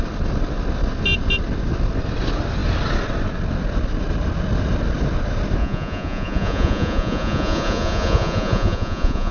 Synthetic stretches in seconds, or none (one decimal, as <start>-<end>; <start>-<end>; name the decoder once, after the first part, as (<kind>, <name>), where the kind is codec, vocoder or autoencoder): 5.6-9.3 (vocoder, Vocos)